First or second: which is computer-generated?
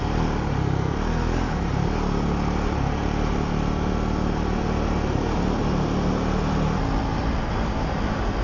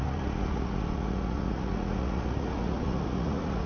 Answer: second